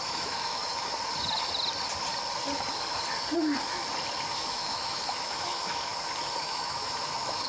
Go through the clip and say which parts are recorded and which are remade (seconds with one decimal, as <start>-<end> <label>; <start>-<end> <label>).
0.0-0.6 remade; 0.6-4.3 recorded; 4.3-5.9 remade; 5.9-6.4 recorded; 6.4-7.5 remade